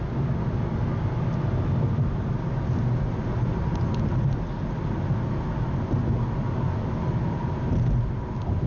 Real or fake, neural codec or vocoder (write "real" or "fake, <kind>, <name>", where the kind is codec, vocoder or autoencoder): real